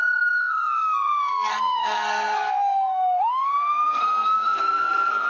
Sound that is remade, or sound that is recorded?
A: remade